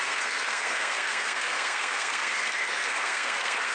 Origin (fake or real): fake